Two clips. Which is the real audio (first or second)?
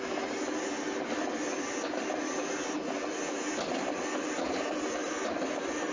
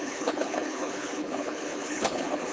first